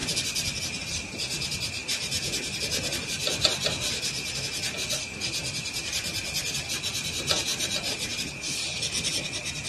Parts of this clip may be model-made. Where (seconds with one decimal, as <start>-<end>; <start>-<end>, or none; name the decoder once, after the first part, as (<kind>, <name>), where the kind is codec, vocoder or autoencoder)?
0.0-0.9 (vocoder, BigVGAN v2); 1.8-2.6; 8.6-9.1